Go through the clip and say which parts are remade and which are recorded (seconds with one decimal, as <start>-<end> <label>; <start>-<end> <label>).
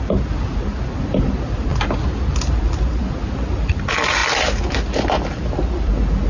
0.0-6.3 recorded